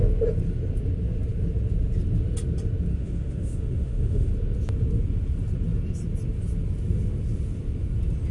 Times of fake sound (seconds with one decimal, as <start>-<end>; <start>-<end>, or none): 2.9-4.3

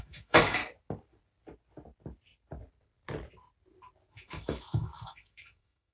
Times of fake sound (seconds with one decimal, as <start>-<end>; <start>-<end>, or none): 0.0-0.6; 4.1-5.9

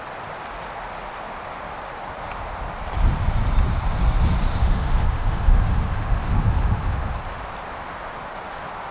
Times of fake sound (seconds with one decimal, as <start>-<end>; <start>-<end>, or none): 4.6-7.2

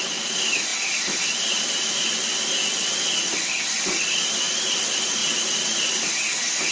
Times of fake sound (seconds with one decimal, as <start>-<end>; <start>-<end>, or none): none

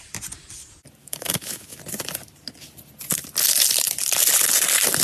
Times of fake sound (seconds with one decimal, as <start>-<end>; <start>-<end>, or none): 1.0-1.8